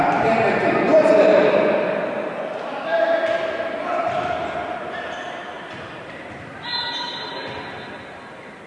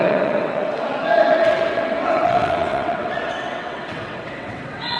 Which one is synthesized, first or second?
second